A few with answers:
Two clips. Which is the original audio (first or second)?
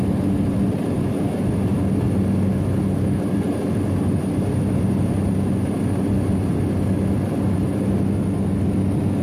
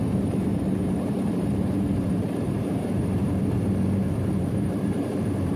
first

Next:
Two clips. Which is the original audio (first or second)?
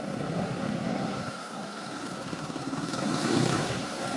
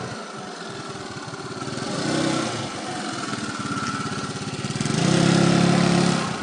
second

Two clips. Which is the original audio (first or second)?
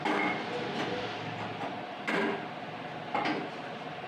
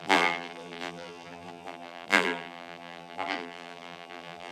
first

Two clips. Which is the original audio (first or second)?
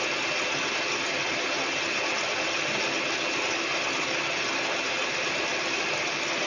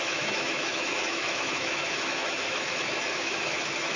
first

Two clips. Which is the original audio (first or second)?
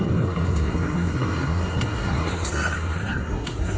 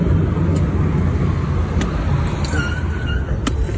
second